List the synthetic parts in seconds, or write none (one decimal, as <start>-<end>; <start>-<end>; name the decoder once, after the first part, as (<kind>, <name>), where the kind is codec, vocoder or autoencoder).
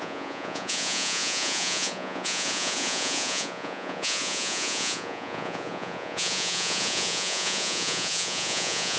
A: 0.0-9.0 (vocoder, Vocos)